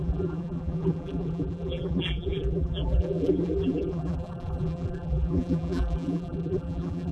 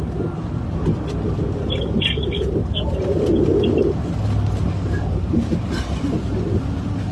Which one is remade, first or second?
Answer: first